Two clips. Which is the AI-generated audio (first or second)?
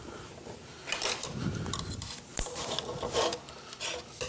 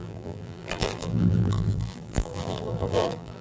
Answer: second